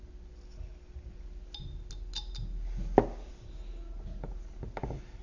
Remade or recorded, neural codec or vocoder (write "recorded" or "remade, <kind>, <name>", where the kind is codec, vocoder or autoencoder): recorded